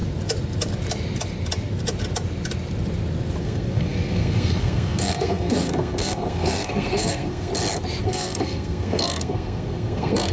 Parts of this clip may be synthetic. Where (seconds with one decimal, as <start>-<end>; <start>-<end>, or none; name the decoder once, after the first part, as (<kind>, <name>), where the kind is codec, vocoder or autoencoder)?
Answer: 3.4-7.5 (codec, SNAC); 8.0-10.3